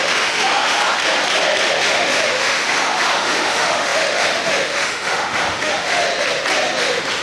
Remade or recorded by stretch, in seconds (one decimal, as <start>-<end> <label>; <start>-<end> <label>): 0.0-0.8 remade; 0.8-1.7 recorded; 1.7-6.0 remade; 6.0-6.8 recorded; 6.8-7.2 remade